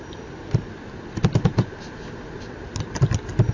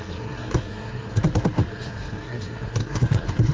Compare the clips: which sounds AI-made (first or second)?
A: second